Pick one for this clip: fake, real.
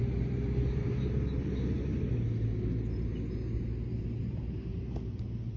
real